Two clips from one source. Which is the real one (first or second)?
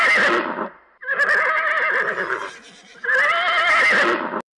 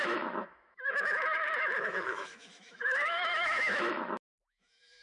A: first